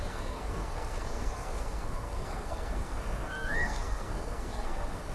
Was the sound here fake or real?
fake